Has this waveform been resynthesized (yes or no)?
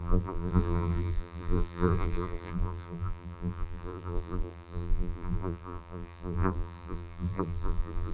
yes